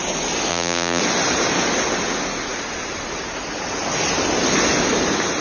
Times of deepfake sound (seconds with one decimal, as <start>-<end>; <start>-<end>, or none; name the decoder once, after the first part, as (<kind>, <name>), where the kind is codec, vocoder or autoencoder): 0.5-1.0 (vocoder, BigVGAN v2)